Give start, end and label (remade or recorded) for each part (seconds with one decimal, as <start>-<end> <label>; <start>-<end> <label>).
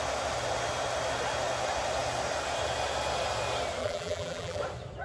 0.0-3.8 recorded; 3.8-4.6 remade; 4.6-5.0 recorded